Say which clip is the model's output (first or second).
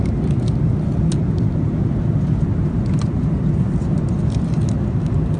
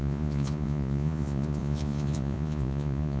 second